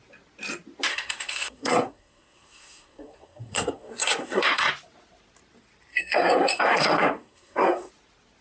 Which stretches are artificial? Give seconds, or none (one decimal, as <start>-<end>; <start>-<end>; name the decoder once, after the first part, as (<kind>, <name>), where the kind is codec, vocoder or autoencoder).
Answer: 0.9-4.7 (codec, SNAC); 5.9-7.9